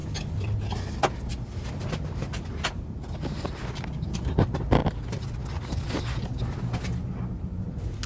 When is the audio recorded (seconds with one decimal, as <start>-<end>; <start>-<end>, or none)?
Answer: 0.0-8.1